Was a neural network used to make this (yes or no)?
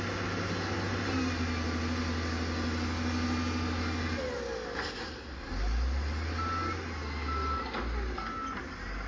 no